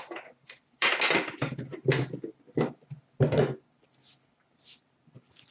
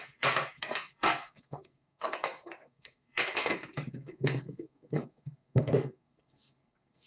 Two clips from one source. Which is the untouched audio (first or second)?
first